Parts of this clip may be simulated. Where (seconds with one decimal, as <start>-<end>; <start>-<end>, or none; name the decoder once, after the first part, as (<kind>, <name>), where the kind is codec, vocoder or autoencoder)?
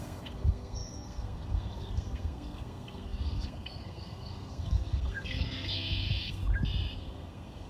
0.0-6.4 (codec, SNAC); 7.0-7.7